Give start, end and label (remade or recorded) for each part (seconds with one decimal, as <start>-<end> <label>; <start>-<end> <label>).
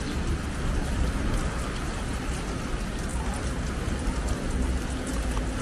0.0-5.6 recorded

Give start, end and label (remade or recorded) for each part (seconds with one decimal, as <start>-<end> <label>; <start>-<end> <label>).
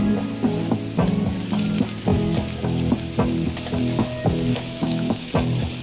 0.0-4.5 recorded; 4.5-5.3 remade; 5.3-5.8 recorded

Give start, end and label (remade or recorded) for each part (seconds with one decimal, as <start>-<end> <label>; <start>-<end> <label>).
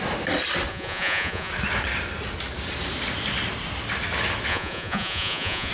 0.0-0.7 recorded; 0.7-1.5 remade; 1.5-4.5 recorded; 4.5-5.7 remade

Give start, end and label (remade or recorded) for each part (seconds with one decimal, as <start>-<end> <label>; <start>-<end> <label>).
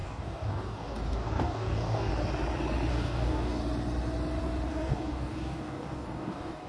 0.0-2.1 remade; 2.1-2.9 recorded; 2.9-3.6 remade; 3.6-4.7 recorded; 4.7-6.7 remade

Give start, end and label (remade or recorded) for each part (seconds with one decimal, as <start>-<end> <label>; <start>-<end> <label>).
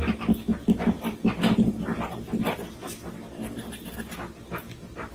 0.0-5.1 recorded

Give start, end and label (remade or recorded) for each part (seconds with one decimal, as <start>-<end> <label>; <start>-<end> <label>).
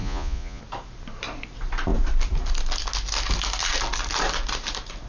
0.0-0.6 remade; 0.6-5.1 recorded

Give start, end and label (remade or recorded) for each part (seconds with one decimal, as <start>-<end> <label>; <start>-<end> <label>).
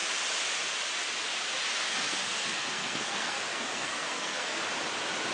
0.0-1.9 recorded; 1.9-4.6 remade; 4.6-5.3 recorded